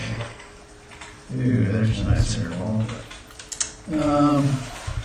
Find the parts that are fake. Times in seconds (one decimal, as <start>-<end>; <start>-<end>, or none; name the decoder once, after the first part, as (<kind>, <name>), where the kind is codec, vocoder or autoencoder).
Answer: 0.0-0.6 (codec, SNAC)